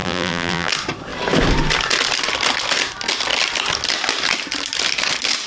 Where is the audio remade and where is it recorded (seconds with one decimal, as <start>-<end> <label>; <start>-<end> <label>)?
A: 0.0-0.7 remade; 0.7-5.5 recorded